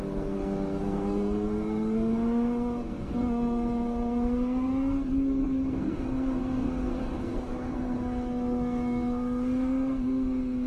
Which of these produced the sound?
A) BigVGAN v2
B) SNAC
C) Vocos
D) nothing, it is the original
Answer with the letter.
B